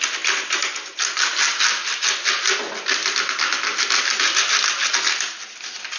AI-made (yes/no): no